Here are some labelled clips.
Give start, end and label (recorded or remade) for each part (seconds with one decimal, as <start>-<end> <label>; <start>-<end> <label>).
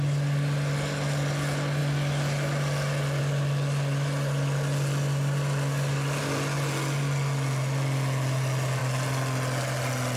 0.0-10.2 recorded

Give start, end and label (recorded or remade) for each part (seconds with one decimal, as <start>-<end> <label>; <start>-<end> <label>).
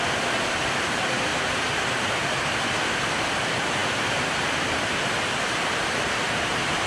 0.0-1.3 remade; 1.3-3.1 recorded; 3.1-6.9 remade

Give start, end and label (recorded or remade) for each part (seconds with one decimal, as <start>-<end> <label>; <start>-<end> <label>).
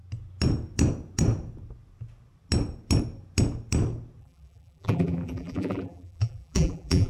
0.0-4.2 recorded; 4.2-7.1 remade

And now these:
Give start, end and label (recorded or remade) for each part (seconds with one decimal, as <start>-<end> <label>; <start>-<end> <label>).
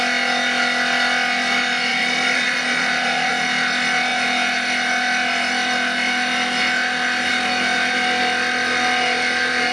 0.0-1.9 recorded; 1.9-3.3 remade; 3.3-9.7 recorded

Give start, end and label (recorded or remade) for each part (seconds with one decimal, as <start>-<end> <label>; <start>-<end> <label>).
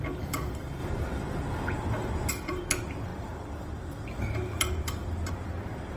0.0-0.8 remade; 0.8-2.3 recorded; 2.3-6.0 remade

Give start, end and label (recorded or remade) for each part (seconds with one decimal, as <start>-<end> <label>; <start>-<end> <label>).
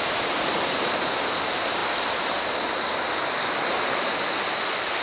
0.0-5.0 remade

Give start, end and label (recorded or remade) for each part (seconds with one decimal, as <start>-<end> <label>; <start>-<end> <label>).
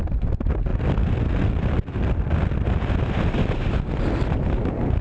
0.0-0.7 recorded; 0.7-3.7 remade; 3.7-5.0 recorded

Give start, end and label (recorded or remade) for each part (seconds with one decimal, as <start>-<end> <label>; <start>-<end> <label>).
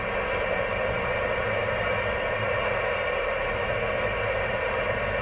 0.0-5.2 recorded